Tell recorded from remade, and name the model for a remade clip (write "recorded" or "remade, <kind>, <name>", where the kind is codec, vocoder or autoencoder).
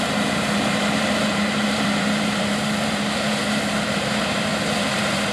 remade, vocoder, BigVGAN v2